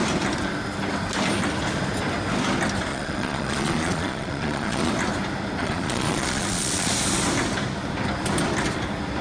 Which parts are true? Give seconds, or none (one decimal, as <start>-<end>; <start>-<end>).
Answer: 0.0-2.9; 4.9-5.6; 6.9-9.2